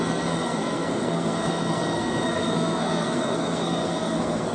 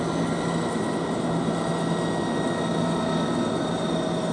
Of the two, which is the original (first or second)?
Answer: second